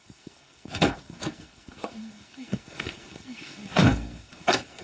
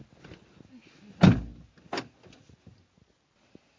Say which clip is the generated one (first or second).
first